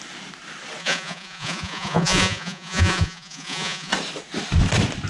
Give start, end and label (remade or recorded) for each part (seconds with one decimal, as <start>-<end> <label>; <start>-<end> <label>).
0.0-0.8 recorded; 0.8-3.9 remade; 3.9-5.1 recorded